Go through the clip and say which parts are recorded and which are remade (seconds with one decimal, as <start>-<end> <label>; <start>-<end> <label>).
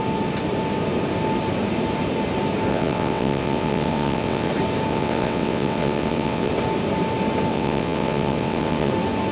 0.0-2.7 recorded; 2.7-4.5 remade; 4.5-4.9 recorded; 4.9-6.5 remade; 6.5-7.5 recorded; 7.5-8.9 remade; 8.9-9.3 recorded